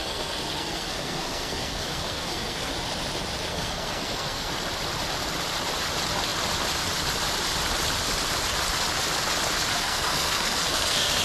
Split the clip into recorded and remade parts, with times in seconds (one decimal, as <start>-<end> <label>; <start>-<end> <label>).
0.0-2.7 remade; 2.7-3.5 recorded; 3.5-4.5 remade; 4.5-9.7 recorded; 9.7-11.2 remade